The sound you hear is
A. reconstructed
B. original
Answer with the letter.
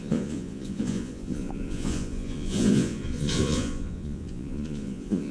A